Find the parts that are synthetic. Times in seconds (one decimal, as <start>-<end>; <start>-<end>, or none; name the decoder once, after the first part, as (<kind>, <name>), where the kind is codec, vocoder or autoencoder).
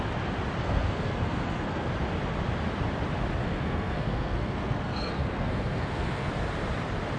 0.6-1.9 (codec, SNAC); 3.4-6.3